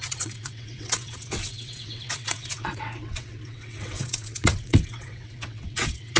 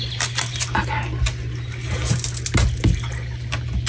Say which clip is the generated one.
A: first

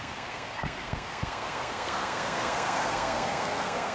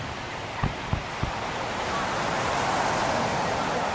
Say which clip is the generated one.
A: first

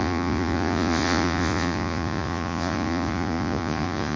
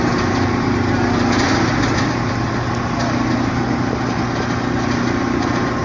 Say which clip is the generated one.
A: first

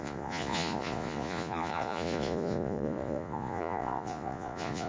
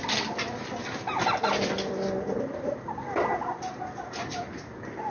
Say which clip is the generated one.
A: first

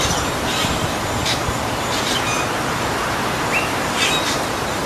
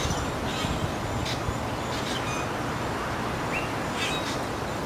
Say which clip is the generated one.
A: first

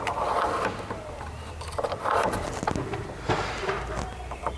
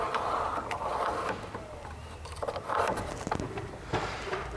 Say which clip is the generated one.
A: second